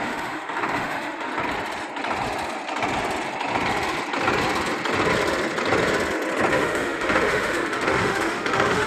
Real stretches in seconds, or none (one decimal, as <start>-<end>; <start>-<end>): 1.3-6.5